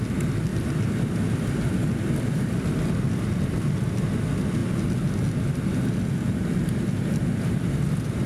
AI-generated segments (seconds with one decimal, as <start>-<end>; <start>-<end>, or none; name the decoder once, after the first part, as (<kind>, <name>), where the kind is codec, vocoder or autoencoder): 0.5-2.7 (vocoder, BigVGAN v2)